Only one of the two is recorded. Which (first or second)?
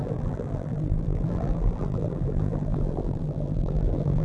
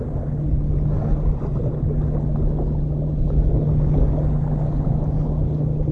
second